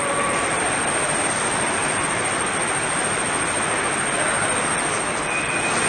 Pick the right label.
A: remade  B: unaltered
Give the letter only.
B